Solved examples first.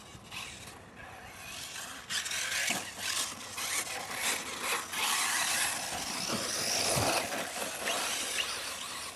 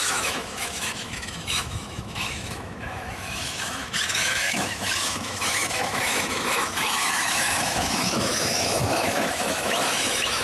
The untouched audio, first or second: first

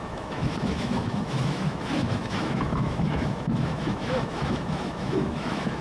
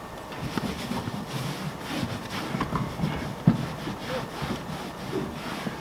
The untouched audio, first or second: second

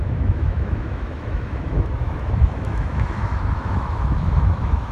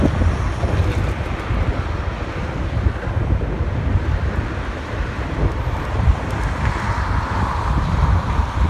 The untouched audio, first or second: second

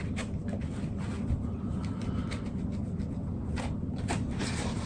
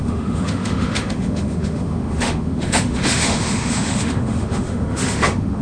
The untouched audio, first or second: first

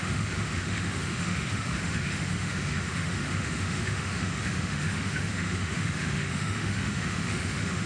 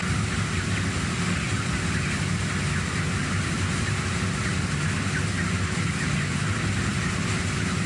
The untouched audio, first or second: second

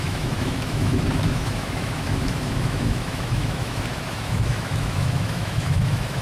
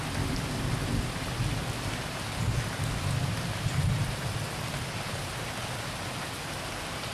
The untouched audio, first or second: second